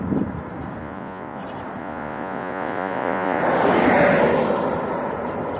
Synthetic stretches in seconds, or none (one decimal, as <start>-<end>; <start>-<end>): 0.8-1.4; 1.8-3.4